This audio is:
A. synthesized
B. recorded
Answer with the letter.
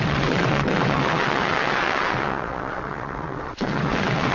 A